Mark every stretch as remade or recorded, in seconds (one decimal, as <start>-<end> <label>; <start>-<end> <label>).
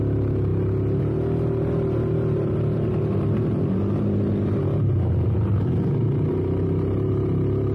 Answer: 0.0-7.7 recorded